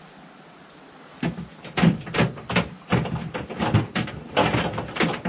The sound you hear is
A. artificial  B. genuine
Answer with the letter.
B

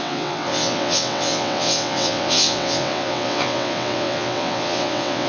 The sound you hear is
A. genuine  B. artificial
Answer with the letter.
B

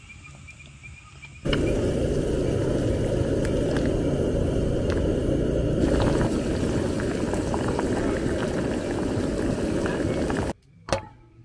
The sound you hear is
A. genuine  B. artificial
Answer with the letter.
A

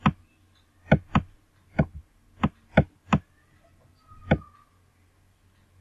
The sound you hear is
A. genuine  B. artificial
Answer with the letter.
A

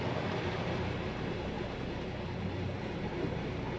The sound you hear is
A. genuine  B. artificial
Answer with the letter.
A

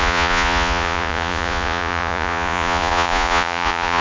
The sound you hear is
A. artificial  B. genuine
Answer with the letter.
A